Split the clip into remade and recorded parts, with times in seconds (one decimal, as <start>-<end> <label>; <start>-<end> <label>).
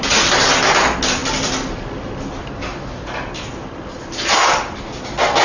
0.0-1.2 recorded; 1.2-1.9 remade; 1.9-5.4 recorded